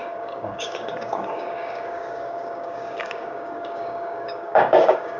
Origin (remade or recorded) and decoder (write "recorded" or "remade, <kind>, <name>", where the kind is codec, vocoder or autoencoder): remade, codec, DAC